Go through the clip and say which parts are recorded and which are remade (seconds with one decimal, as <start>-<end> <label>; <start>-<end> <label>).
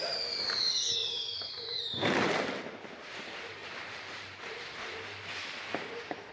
0.0-5.4 remade; 5.4-6.3 recorded